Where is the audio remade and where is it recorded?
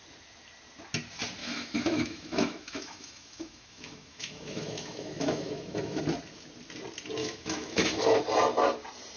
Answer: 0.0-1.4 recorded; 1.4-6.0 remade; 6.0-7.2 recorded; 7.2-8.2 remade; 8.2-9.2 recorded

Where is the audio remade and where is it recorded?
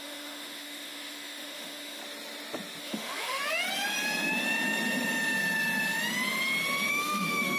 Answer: 0.0-2.0 remade; 2.0-2.8 recorded; 2.8-3.4 remade; 3.4-6.9 recorded; 6.9-7.6 remade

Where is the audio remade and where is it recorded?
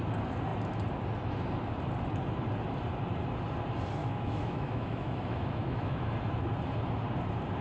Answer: 0.0-4.0 recorded; 4.0-6.1 remade; 6.1-7.6 recorded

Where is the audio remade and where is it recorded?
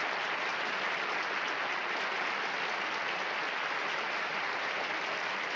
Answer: 0.0-5.6 recorded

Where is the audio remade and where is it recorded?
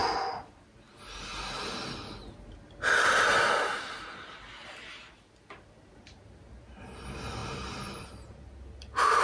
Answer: 0.0-9.2 recorded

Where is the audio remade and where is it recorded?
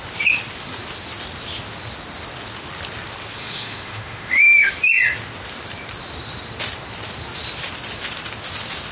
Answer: 0.0-3.4 recorded; 3.4-4.7 remade; 4.7-8.9 recorded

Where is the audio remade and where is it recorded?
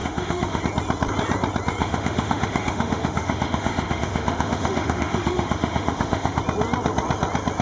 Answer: 0.0-0.6 remade; 0.6-1.8 recorded; 1.8-6.4 remade; 6.4-7.6 recorded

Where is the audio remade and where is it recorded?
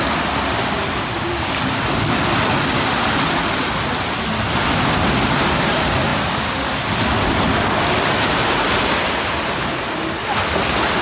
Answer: 0.0-11.0 recorded